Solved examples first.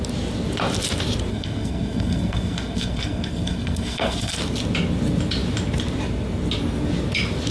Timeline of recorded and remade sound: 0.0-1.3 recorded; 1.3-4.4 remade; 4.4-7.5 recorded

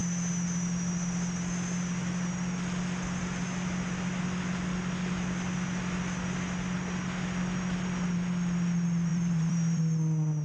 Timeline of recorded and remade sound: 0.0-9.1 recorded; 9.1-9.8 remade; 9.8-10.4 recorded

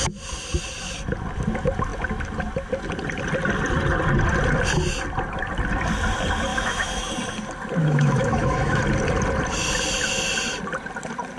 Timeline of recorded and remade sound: 0.0-6.5 recorded; 6.5-7.1 remade; 7.1-7.8 recorded; 7.8-8.8 remade; 8.8-11.4 recorded

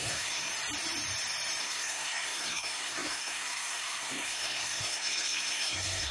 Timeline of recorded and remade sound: 0.0-0.5 remade; 0.5-1.6 recorded; 1.6-6.1 remade

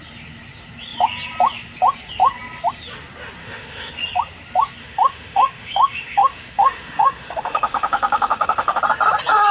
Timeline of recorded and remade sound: 0.0-3.4 recorded; 3.4-3.9 remade; 3.9-4.8 recorded; 4.8-8.8 remade; 8.8-9.5 recorded

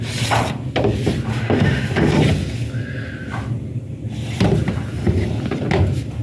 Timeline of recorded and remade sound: 0.0-1.3 recorded; 1.3-2.2 remade; 2.2-6.2 recorded

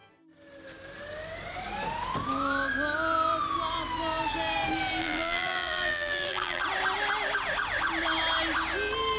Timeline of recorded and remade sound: 0.0-5.0 recorded; 5.0-6.6 remade; 6.6-9.2 recorded